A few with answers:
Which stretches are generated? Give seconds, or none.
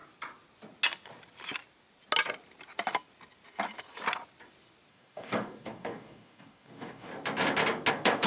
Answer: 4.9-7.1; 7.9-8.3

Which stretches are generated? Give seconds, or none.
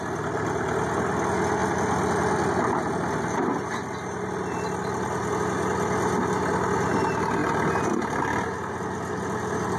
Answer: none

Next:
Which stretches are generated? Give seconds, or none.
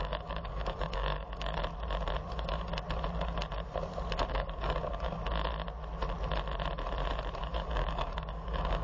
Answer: 0.0-1.6; 2.3-2.7; 4.3-5.2; 7.4-8.8